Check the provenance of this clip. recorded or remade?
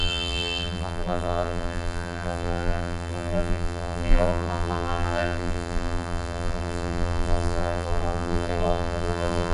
remade